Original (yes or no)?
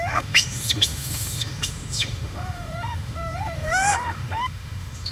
no